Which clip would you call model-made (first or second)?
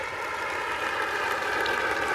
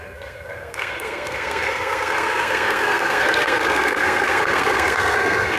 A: second